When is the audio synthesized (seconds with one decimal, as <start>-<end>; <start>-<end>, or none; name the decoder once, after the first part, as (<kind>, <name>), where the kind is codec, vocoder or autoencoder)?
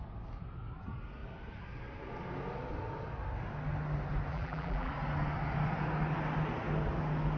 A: 4.3-4.9 (vocoder, BigVGAN v2)